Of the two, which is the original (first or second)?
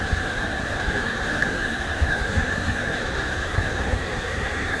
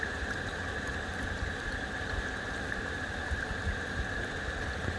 second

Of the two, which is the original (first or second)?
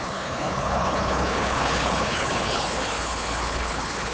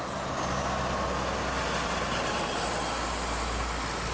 second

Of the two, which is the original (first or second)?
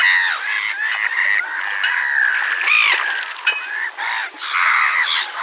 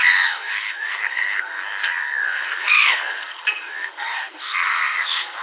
first